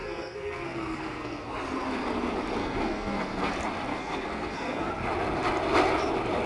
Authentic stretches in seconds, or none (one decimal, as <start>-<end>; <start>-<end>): 1.5-2.6; 3.5-3.9; 4.9-6.5